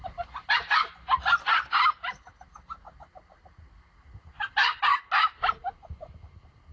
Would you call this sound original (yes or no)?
yes